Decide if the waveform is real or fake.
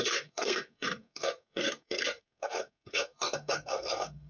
fake